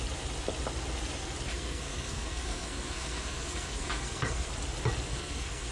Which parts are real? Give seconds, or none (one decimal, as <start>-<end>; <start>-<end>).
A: 0.0-1.5; 4.5-5.1